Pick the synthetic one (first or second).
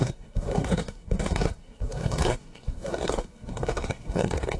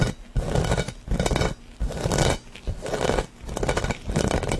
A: first